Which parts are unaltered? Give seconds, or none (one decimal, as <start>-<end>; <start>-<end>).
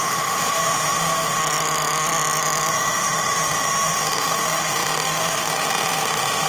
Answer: 1.4-2.7